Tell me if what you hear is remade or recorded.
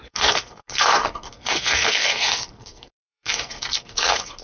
remade